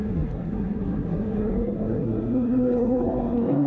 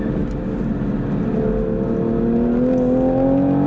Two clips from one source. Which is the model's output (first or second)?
first